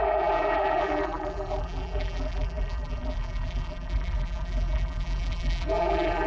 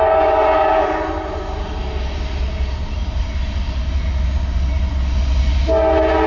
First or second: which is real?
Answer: second